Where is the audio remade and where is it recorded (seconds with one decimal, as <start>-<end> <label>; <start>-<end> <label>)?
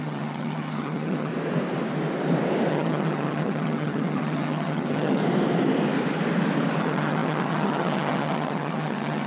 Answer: 0.0-1.3 remade; 1.3-2.7 recorded; 2.7-5.2 remade; 5.2-6.8 recorded; 6.8-9.3 remade